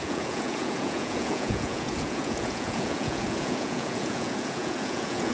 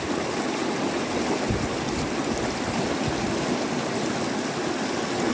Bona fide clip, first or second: second